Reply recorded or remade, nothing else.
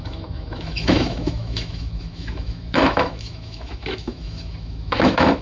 remade